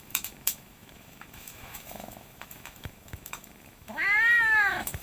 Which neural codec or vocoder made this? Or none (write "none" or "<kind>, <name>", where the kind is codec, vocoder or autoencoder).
autoencoder, DAC-VAE